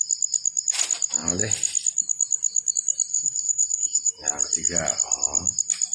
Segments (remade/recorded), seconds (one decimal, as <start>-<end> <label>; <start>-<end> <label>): 0.0-3.1 recorded; 3.1-4.1 remade; 4.1-5.9 recorded